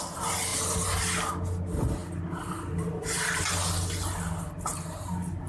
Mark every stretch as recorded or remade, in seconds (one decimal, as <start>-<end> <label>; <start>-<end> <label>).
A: 0.0-5.5 recorded

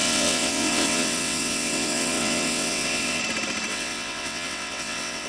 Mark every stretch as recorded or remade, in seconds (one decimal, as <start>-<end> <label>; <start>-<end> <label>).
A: 0.0-3.2 remade; 3.2-3.7 recorded; 3.7-5.3 remade